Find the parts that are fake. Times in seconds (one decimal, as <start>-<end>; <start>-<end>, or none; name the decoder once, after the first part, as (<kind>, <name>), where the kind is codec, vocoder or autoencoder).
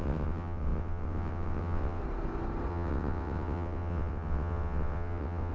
0.0-2.0 (vocoder, WaveNeXt); 2.7-5.5